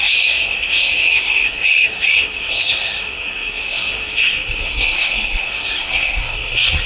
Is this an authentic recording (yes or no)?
no